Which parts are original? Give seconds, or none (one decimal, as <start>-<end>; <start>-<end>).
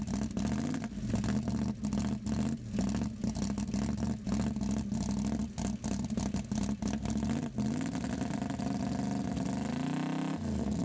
0.0-10.8